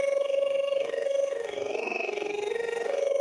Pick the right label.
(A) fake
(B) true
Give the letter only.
A